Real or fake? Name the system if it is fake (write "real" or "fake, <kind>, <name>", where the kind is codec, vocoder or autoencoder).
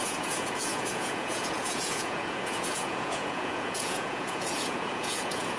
fake, vocoder, Vocos